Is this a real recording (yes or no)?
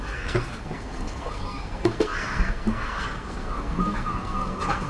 no